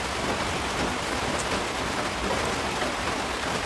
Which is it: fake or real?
real